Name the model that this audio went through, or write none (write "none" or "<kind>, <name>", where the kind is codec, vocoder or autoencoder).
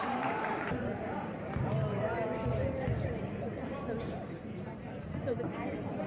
vocoder, BigVGAN v2